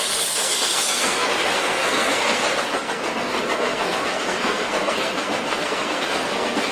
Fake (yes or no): yes